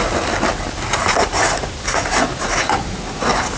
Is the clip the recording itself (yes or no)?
yes